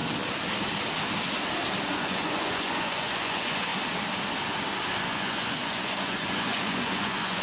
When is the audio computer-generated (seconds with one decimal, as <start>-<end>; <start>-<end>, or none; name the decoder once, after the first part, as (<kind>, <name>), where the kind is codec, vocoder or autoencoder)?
1.9-3.7 (vocoder, Vocos); 5.0-7.4